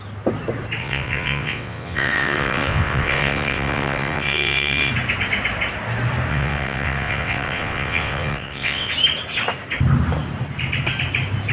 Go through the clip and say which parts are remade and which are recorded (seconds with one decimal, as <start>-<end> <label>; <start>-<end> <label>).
0.0-0.8 recorded; 0.8-4.9 remade; 4.9-6.3 recorded; 6.3-8.9 remade; 8.9-11.5 recorded